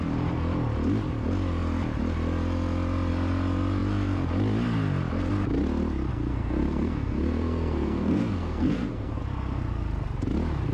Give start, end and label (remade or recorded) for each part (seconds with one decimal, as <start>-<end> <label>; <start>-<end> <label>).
0.0-6.1 recorded; 6.1-9.2 remade; 9.2-10.7 recorded

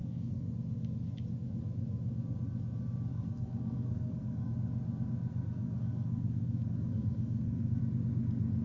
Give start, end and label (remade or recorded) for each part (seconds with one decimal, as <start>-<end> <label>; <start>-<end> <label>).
0.0-0.5 remade; 0.5-3.1 recorded; 3.1-4.5 remade; 4.5-5.3 recorded; 5.3-7.8 remade; 7.8-8.6 recorded

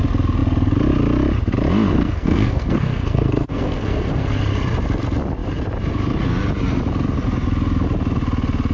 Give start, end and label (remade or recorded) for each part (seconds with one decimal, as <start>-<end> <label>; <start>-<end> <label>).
0.0-1.9 recorded; 1.9-4.4 remade; 4.4-8.7 recorded

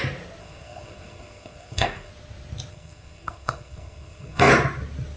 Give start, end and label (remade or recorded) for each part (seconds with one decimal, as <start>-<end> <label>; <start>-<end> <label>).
0.0-0.4 recorded; 0.4-2.1 remade; 2.1-2.7 recorded; 2.7-4.5 remade; 4.5-5.2 recorded

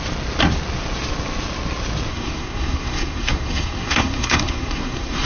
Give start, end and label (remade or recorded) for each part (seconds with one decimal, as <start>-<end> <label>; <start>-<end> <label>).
0.0-2.1 recorded; 2.1-5.3 remade

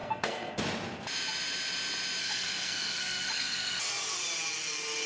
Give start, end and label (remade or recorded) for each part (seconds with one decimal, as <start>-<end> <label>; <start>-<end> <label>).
0.0-0.6 remade; 0.6-2.2 recorded; 2.2-3.8 remade; 3.8-5.1 recorded

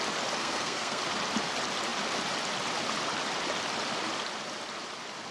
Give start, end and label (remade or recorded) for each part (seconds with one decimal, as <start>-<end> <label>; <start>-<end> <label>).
0.0-0.4 recorded; 0.4-1.0 remade; 1.0-5.3 recorded